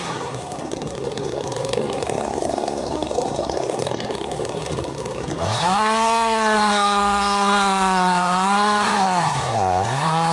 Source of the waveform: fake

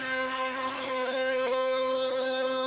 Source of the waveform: fake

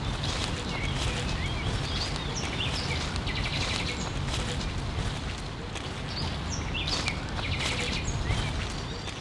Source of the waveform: real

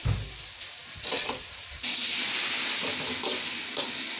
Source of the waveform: real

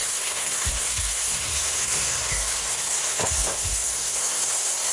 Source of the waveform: fake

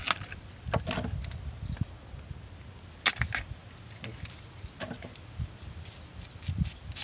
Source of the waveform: real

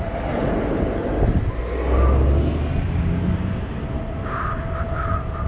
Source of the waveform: real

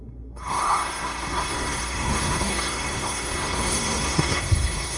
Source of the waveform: fake